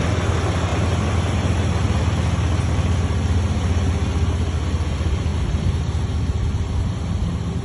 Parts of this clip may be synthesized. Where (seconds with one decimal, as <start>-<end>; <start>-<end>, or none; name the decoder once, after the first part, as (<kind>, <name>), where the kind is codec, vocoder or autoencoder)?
none